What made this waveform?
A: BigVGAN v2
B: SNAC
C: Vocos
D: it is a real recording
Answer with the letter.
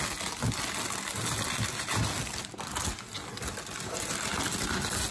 D